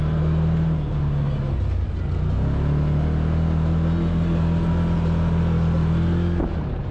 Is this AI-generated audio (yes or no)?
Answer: no